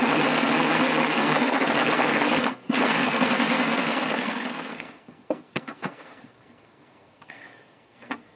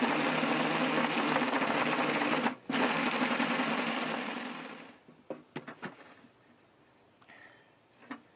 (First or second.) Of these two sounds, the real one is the second